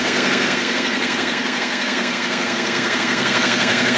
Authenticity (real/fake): fake